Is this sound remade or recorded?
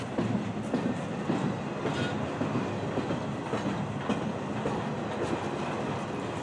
recorded